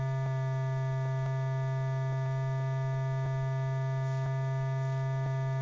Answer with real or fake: real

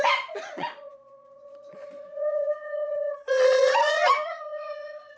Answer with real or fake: fake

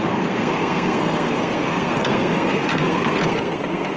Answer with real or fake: fake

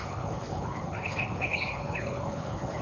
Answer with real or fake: fake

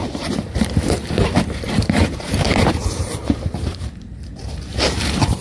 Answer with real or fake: fake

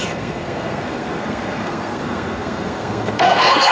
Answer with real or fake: fake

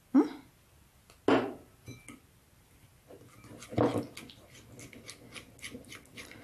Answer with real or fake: real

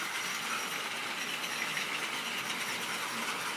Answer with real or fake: real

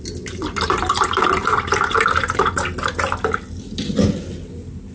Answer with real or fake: real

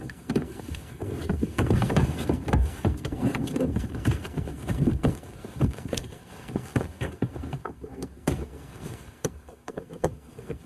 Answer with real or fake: fake